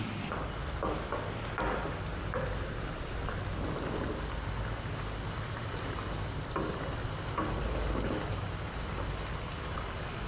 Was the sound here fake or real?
real